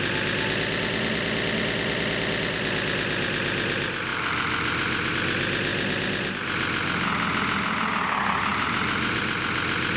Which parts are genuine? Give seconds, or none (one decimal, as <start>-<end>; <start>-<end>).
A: 0.0-4.1; 5.1-8.5; 9.2-10.0